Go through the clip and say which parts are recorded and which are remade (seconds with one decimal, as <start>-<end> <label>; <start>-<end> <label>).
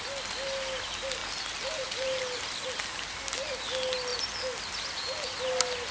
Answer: 0.0-5.9 recorded